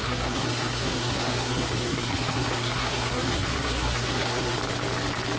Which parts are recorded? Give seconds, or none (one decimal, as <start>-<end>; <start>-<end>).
4.6-5.4